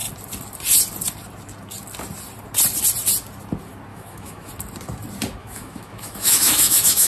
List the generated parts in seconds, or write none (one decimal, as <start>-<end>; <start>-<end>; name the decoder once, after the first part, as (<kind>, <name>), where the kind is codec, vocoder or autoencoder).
3.9-4.5 (autoencoder, DAC-VAE); 5.4-7.1